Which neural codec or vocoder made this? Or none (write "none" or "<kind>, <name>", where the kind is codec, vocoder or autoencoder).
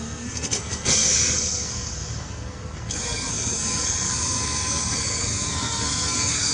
codec, SNAC